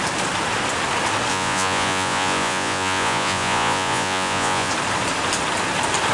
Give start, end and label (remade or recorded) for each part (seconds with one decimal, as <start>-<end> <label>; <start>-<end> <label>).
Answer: 0.0-1.3 recorded; 1.3-4.7 remade; 4.7-6.1 recorded